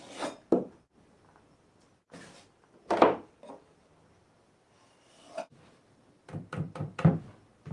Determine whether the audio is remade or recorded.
recorded